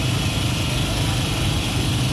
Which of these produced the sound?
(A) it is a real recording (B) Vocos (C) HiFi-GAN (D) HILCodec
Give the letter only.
A